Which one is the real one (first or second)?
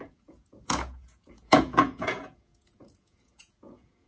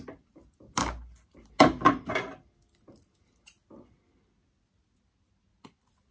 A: second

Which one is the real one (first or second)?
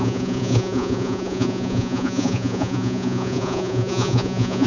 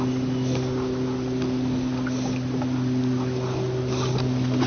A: second